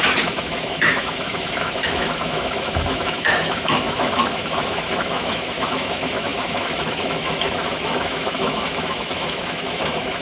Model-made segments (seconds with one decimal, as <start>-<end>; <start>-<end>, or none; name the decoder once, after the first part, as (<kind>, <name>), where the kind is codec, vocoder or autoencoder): 0.0-10.2 (autoencoder, DAC-VAE)

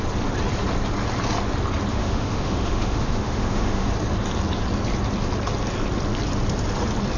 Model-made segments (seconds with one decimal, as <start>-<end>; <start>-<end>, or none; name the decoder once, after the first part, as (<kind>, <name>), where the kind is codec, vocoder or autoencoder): 1.9-3.9 (autoencoder, DAC-VAE)

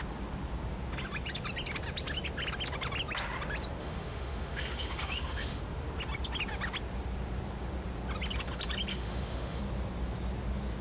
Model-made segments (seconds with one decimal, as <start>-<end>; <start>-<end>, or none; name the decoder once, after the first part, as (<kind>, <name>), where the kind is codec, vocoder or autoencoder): 3.8-5.6 (autoencoder, DAC-VAE); 8.9-9.6

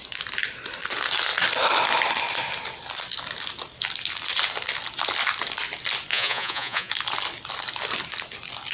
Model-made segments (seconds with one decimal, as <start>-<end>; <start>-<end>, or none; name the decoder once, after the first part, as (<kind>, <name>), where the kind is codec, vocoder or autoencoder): 6.1-6.9 (vocoder, Vocos)

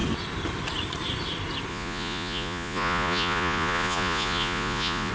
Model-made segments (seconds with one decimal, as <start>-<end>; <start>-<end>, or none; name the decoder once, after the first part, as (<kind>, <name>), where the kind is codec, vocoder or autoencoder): 1.7-5.1 (vocoder, Vocos)

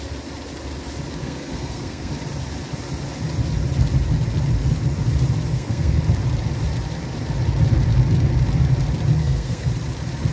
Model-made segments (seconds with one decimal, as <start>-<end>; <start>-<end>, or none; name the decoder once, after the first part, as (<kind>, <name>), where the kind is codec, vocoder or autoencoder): 1.2-2.1 (codec, SNAC); 5.5-6.0; 9.2-9.7

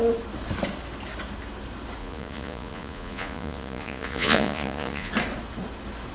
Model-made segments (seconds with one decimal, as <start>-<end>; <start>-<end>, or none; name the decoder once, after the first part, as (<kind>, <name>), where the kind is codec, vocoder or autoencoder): 2.0-5.1 (vocoder, Vocos)